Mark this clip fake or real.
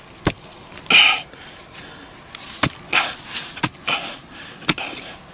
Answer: real